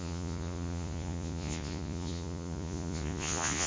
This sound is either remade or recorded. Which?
remade